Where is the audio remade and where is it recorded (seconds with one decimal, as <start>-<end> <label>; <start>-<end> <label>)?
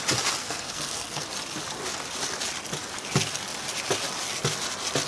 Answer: 0.0-0.4 recorded; 0.4-1.3 remade; 1.3-5.1 recorded